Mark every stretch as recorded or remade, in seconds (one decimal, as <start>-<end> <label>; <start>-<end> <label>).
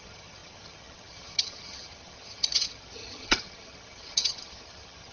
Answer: 0.0-5.1 remade